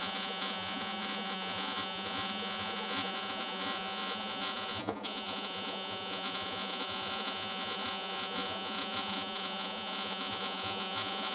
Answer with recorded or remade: remade